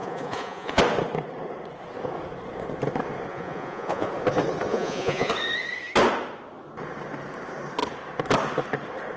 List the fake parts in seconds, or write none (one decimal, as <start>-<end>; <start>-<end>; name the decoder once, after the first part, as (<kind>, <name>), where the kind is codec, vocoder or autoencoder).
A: 0.0-0.8 (vocoder, Vocos); 3.3-4.1; 4.7-5.3